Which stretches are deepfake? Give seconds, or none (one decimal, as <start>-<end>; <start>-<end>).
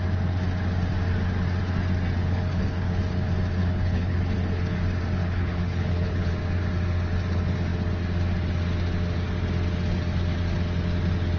2.2-3.0; 3.6-4.2; 5.2-6.3